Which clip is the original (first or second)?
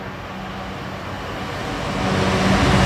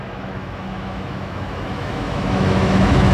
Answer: first